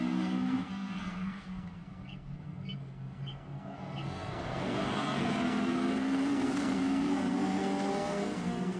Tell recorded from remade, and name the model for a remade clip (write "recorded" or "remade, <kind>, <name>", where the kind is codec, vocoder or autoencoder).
remade, codec, SNAC